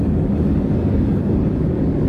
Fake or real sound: fake